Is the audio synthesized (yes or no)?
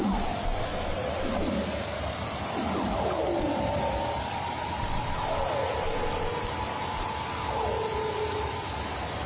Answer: no